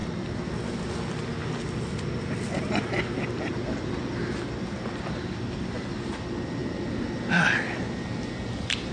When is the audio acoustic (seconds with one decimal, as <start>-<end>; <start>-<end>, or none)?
0.0-8.9